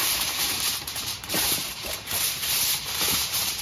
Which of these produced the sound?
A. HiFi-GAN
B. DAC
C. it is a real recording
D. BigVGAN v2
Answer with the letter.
D